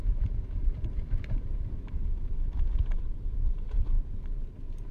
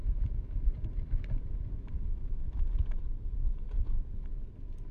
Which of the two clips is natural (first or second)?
second